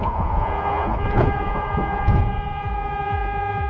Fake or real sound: fake